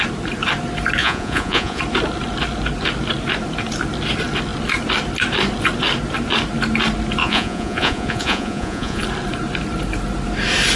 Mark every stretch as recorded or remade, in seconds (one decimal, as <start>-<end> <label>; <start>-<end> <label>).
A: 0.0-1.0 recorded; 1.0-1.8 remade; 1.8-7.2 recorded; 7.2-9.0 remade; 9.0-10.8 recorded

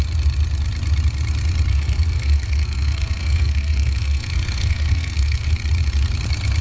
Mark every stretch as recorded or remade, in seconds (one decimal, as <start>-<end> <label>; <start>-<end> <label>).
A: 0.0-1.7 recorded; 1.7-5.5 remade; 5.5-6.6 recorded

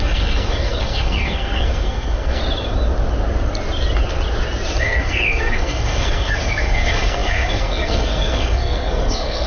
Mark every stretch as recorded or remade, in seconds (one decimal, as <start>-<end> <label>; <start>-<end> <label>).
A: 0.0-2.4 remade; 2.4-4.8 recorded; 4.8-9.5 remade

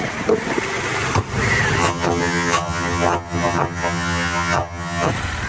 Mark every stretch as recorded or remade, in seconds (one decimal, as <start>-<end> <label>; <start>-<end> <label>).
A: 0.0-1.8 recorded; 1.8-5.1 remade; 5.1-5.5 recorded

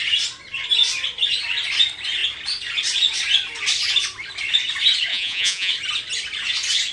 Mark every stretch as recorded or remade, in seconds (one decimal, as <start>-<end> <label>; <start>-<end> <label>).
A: 0.0-5.1 recorded; 5.1-5.7 remade; 5.7-6.9 recorded

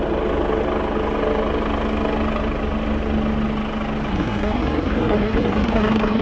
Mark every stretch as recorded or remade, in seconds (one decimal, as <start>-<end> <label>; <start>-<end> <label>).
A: 0.0-4.1 recorded; 4.1-6.2 remade